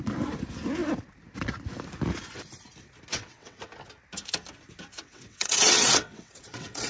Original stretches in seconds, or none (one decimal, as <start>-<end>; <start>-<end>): 0.0-3.1; 3.6-4.9